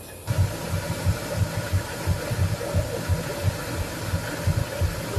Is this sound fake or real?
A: real